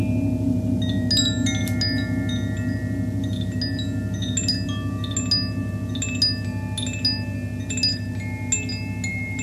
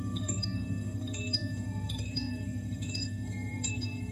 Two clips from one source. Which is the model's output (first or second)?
second